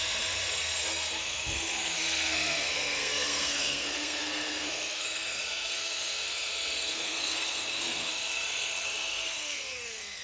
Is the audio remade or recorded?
remade